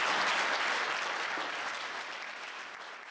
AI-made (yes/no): no